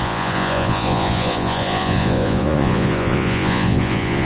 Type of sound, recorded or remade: remade